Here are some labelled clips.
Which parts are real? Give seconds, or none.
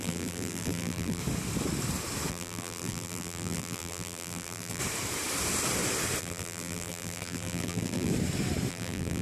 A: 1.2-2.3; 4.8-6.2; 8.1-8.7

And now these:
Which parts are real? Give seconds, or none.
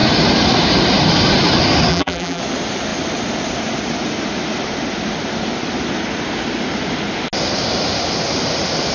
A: 0.0-1.9; 2.4-8.9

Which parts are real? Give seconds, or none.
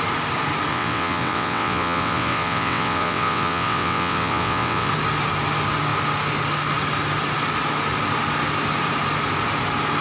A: 0.0-0.7; 4.9-10.0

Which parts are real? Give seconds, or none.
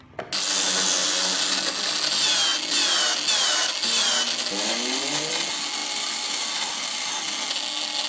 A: 0.0-5.8; 7.1-8.1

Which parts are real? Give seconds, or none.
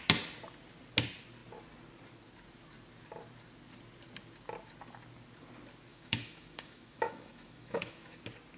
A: 0.0-5.9; 8.2-8.6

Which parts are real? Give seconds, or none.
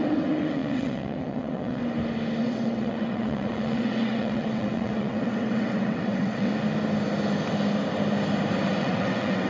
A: 1.8-2.4; 6.5-8.8